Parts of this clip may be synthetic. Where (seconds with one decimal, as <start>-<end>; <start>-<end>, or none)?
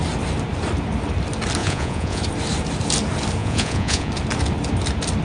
1.6-2.2; 3.4-4.1